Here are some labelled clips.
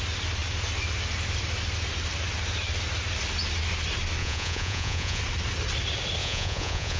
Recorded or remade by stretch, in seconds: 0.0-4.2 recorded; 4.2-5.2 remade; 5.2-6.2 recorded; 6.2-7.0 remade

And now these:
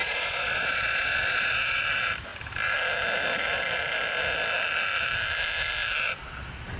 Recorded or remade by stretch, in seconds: 0.0-1.8 remade; 1.8-6.8 recorded